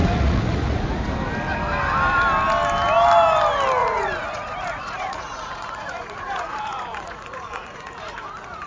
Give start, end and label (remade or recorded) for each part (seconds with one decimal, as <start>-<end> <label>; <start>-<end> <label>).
0.0-1.1 remade; 1.1-3.8 recorded; 3.8-8.7 remade

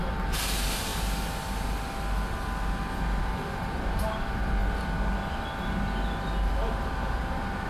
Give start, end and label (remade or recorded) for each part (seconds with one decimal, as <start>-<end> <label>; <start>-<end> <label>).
0.0-0.9 remade; 0.9-3.2 recorded; 3.2-4.6 remade; 4.6-6.5 recorded; 6.5-7.7 remade